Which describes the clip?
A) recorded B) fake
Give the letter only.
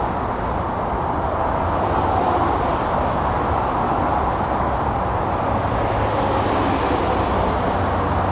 A